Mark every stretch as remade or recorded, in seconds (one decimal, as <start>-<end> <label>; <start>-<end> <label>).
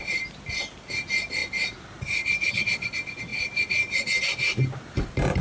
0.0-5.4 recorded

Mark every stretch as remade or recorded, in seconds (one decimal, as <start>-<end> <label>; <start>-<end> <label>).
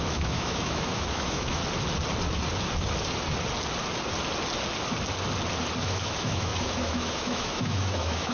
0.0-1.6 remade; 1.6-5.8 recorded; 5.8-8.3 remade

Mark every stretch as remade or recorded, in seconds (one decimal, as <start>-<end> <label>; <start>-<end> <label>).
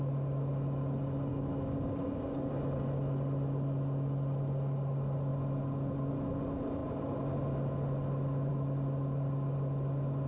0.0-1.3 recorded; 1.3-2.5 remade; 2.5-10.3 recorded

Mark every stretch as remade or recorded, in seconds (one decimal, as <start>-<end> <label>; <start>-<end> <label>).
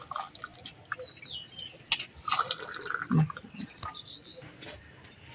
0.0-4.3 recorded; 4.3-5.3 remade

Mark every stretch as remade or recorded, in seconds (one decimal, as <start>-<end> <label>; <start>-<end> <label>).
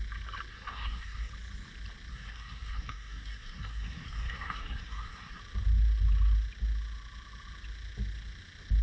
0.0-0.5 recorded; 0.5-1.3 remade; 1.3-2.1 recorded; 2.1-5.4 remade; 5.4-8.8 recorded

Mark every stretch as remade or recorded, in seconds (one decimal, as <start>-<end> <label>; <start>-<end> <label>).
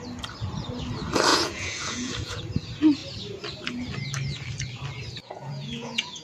0.0-1.3 recorded; 1.3-2.4 remade; 2.4-5.2 recorded; 5.2-6.2 remade